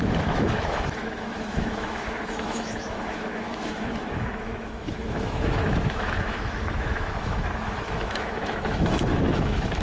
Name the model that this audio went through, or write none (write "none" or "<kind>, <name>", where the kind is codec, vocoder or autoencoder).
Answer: autoencoder, DAC-VAE